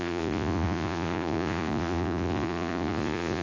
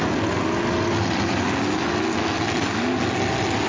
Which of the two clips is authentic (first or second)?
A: second